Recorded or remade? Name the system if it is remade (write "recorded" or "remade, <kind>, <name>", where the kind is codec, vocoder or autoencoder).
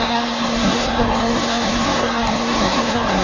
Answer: remade, codec, SNAC